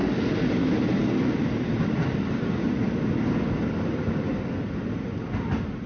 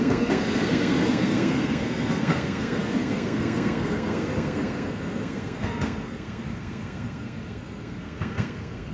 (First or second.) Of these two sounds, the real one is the first